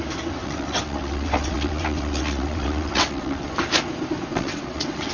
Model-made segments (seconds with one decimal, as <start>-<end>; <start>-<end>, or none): 0.4-3.5; 4.3-5.1

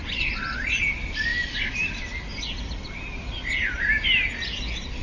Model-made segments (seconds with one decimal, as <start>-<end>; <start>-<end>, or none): none

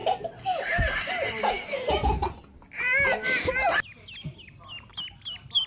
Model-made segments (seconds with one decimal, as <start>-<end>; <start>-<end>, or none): none

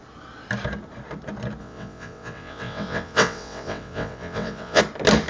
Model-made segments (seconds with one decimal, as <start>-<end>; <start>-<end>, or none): 1.6-4.8

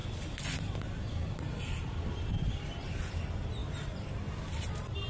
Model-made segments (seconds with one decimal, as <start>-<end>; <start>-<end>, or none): none

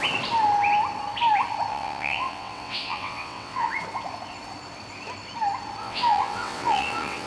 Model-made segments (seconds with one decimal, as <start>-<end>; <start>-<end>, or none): 1.7-3.7; 5.8-7.3

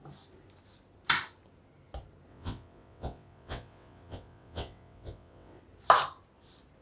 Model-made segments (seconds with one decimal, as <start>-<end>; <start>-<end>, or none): 2.3-5.6